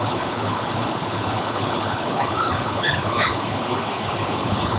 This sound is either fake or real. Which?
fake